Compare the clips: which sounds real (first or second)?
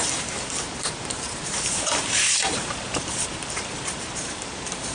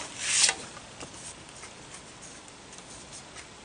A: second